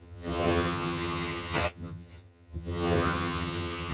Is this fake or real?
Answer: fake